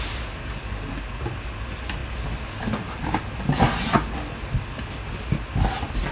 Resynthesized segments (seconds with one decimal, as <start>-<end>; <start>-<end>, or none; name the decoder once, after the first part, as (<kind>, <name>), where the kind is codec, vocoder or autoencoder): none